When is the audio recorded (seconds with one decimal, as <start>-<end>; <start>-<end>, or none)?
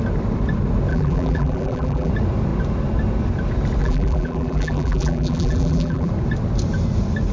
0.0-0.9; 2.1-3.8; 6.1-7.3